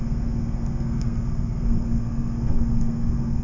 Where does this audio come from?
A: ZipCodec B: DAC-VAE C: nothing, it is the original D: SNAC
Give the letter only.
D